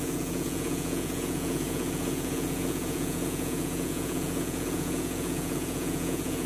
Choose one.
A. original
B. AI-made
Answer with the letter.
B